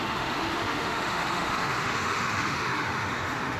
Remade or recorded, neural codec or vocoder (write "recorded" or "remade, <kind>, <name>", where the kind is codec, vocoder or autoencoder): remade, autoencoder, DAC-VAE